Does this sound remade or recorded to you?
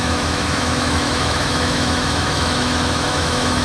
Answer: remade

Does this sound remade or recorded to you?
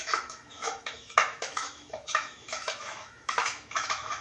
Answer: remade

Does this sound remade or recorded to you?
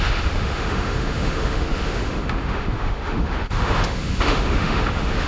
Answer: remade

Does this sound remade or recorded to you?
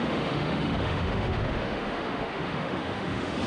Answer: remade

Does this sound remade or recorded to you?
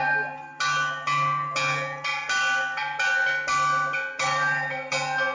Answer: recorded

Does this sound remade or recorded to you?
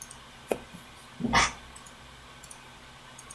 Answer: recorded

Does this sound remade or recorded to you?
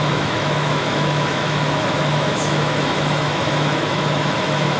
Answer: remade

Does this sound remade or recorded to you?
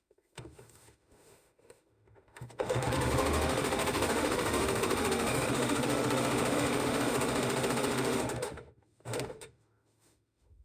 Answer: remade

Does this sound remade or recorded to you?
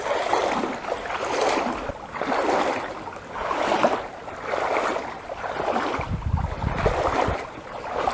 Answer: recorded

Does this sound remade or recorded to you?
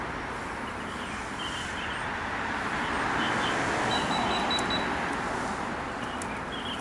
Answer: recorded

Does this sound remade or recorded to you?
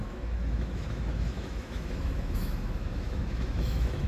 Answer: remade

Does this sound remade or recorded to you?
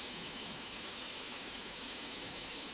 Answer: remade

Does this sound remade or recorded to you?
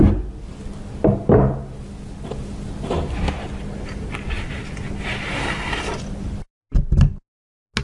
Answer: recorded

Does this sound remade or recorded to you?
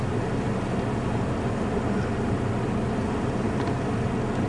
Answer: recorded